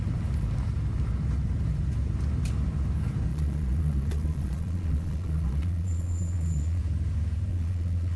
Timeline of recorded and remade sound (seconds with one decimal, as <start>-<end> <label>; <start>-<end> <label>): 0.0-3.3 recorded; 3.3-6.8 remade; 6.8-7.5 recorded; 7.5-8.2 remade